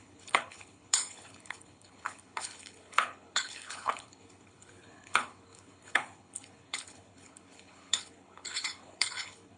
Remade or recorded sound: remade